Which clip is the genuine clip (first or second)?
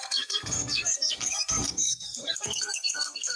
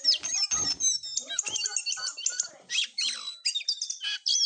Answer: second